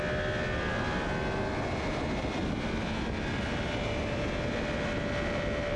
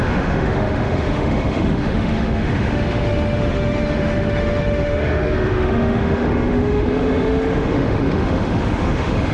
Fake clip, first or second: second